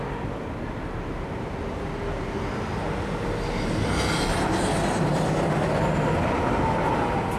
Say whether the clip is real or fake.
real